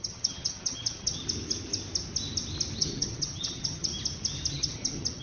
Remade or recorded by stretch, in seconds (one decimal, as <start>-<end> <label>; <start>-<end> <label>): 0.0-1.2 remade; 1.2-2.8 recorded; 2.8-3.9 remade; 3.9-4.5 recorded; 4.5-5.2 remade